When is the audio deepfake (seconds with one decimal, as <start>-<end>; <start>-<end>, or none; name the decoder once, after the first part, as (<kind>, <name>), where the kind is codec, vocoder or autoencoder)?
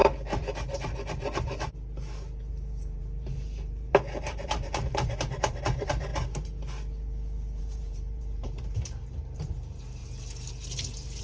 2.5-6.1 (vocoder, BigVGAN v2); 7.6-11.2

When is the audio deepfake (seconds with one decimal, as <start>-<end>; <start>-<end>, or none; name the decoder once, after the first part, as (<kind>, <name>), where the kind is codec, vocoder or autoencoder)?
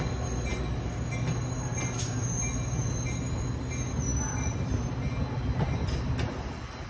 none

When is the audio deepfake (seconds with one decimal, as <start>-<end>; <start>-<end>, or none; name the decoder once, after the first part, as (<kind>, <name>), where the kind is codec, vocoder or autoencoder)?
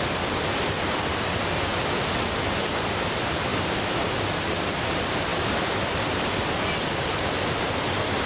none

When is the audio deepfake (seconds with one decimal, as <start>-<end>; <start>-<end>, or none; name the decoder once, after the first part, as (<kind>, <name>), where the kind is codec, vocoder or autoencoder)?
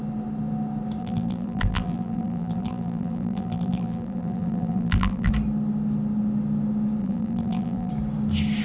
1.0-5.3 (vocoder, BigVGAN v2); 7.0-7.9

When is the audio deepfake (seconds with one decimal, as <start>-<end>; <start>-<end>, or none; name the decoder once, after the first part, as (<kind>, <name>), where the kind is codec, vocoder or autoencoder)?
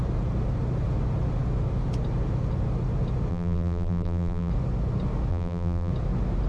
3.3-4.5 (vocoder, BigVGAN v2); 5.3-5.9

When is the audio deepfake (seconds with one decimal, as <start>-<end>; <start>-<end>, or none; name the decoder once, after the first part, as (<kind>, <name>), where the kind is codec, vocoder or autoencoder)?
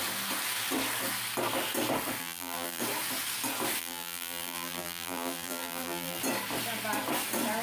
2.2-2.8 (vocoder, BigVGAN v2); 3.8-6.2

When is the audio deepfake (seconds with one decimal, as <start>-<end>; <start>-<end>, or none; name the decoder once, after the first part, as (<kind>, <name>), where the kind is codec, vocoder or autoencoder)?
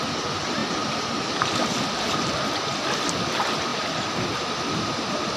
0.0-5.4 (vocoder, BigVGAN v2)